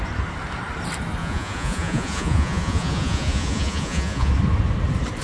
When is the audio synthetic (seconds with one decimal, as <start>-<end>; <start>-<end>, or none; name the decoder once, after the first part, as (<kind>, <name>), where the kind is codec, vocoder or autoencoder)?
1.2-4.3 (vocoder, Vocos)

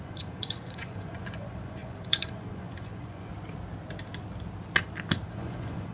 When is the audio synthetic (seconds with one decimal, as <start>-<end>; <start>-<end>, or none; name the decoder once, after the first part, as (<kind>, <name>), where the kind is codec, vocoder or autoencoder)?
0.0-3.3 (vocoder, Vocos); 5.3-5.9

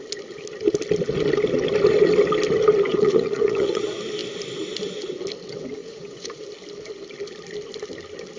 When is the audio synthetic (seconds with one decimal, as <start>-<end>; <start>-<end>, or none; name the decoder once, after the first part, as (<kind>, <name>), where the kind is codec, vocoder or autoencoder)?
2.9-3.8 (vocoder, Vocos); 5.8-6.4

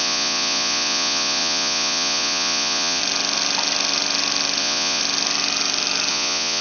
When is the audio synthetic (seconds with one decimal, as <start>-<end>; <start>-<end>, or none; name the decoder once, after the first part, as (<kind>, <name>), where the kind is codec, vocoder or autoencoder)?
0.0-3.0 (vocoder, Vocos); 4.6-5.0; 6.1-6.6